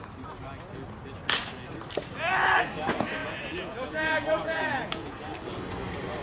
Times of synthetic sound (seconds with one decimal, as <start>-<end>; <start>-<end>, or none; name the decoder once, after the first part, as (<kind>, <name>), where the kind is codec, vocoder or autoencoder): 3.2-5.2 (vocoder, Vocos)